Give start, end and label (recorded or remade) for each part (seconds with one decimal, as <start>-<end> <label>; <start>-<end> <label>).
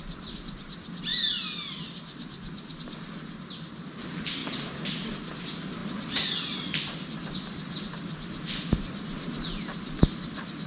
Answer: 0.0-10.7 recorded